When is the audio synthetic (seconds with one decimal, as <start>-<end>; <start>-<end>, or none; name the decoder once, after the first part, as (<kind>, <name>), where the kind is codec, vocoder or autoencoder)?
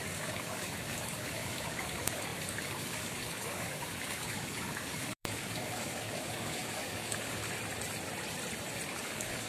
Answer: 0.0-7.4 (codec, DAC); 9.0-9.5